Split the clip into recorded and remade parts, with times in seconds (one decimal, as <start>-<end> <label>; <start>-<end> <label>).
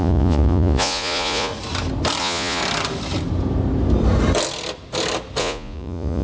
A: 0.0-1.5 remade; 1.5-2.2 recorded; 2.2-2.6 remade; 2.6-5.4 recorded; 5.4-6.2 remade